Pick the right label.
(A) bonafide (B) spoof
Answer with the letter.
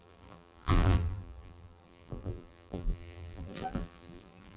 B